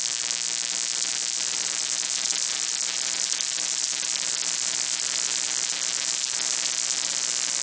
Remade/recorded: recorded